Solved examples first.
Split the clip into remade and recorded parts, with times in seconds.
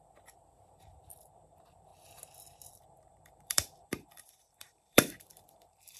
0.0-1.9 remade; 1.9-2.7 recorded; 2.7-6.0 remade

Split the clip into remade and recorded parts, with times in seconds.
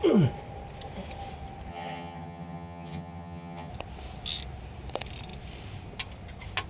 0.0-1.7 recorded; 1.7-3.7 remade; 3.7-6.7 recorded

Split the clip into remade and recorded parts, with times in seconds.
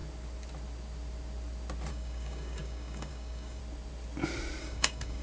0.0-1.9 recorded; 1.9-3.6 remade; 3.6-4.6 recorded; 4.6-5.2 remade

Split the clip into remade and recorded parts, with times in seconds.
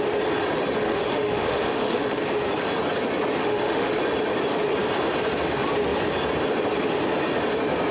0.0-0.8 recorded; 0.8-2.2 remade; 2.2-3.4 recorded; 3.4-4.0 remade; 4.0-7.9 recorded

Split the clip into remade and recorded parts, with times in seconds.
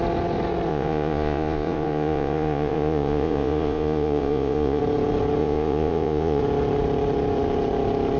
0.0-0.7 recorded; 0.7-4.8 remade; 4.8-5.4 recorded; 5.4-6.4 remade; 6.4-8.2 recorded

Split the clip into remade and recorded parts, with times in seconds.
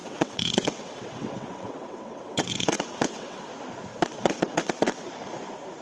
0.0-3.5 remade; 3.5-3.9 recorded; 3.9-5.1 remade; 5.1-5.8 recorded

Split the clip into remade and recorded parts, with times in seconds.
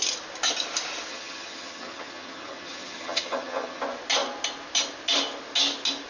0.0-1.1 recorded; 1.1-3.8 remade; 3.8-6.1 recorded